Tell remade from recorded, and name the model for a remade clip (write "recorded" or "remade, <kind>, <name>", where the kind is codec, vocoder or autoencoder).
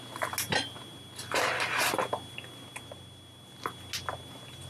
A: recorded